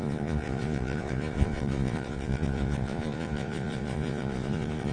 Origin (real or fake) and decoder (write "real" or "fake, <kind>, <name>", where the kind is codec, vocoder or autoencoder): fake, vocoder, Vocos